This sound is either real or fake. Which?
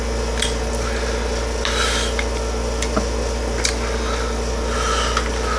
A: real